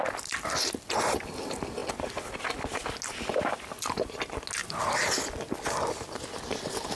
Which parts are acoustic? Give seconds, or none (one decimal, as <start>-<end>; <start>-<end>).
0.0-7.0